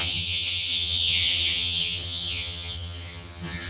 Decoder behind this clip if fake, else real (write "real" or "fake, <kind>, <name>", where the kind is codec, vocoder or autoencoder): fake, vocoder, HiFi-GAN